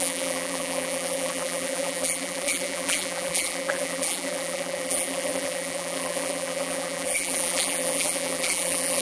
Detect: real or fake fake